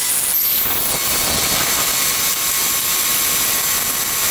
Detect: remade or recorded recorded